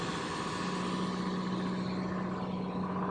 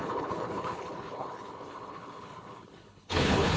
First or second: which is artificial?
second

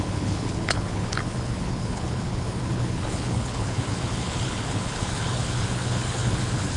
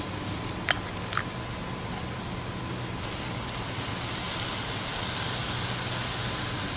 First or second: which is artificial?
first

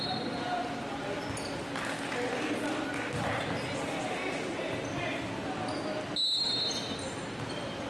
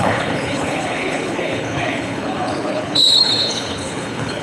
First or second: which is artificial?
second